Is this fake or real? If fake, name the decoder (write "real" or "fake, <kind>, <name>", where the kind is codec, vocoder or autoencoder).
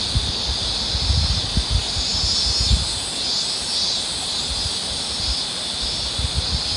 real